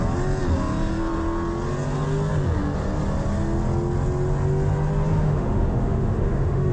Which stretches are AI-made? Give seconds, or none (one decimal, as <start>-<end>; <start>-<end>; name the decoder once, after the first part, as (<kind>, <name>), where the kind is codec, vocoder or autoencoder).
5.1-6.7 (autoencoder, DAC-VAE)